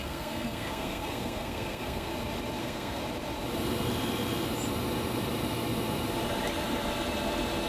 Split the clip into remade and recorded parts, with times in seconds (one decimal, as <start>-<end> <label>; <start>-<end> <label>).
0.0-2.1 remade; 2.1-2.6 recorded; 2.6-3.0 remade; 3.0-7.7 recorded

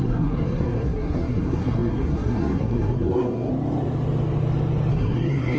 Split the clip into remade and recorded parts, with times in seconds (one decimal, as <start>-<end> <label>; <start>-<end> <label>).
0.0-3.5 remade; 3.5-4.9 recorded; 4.9-5.6 remade

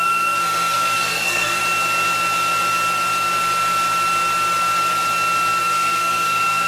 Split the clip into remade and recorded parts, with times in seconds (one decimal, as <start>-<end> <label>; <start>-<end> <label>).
0.0-1.6 remade; 1.6-5.6 recorded; 5.6-6.7 remade

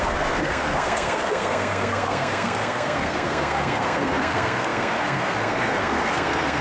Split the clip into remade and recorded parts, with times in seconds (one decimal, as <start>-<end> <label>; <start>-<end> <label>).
0.0-6.6 remade